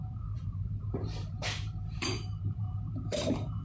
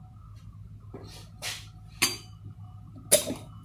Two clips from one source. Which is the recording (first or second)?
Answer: second